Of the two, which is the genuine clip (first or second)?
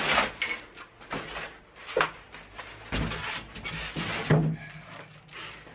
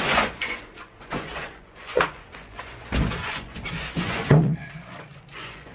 first